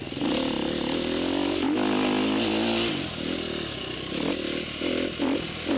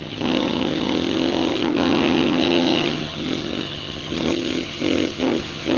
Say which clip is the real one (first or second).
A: first